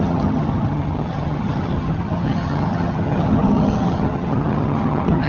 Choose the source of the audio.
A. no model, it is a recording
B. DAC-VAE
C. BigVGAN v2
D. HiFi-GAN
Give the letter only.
D